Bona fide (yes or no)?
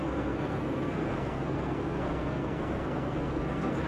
no